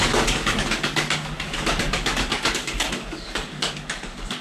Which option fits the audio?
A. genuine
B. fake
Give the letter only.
B